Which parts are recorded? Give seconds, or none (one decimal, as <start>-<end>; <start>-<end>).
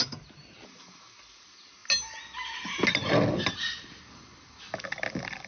0.0-5.5